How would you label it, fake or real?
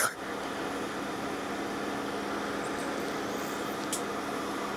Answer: real